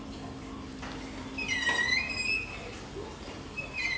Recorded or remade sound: recorded